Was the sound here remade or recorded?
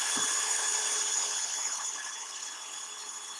remade